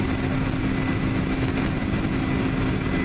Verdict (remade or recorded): recorded